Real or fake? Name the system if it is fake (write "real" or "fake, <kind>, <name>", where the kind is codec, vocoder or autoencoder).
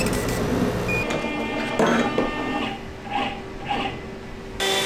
real